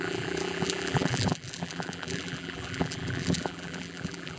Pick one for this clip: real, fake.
fake